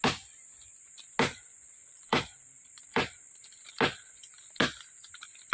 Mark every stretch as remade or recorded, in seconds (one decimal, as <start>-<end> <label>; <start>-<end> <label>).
0.0-1.8 recorded; 1.8-3.7 remade; 3.7-5.5 recorded